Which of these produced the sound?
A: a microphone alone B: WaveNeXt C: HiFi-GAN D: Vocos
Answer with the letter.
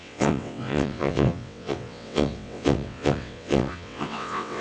B